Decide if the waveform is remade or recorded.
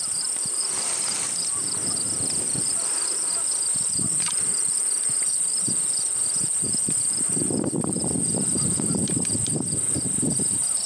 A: recorded